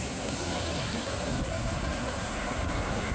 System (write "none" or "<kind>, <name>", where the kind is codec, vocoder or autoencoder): codec, SNAC